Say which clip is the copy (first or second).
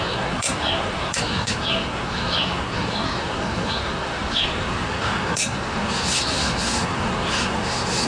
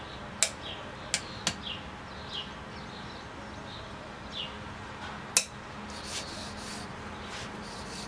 first